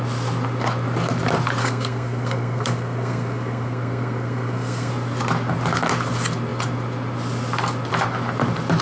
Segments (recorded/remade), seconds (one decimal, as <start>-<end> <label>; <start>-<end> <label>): 0.0-1.6 recorded; 1.6-4.9 remade; 4.9-8.8 recorded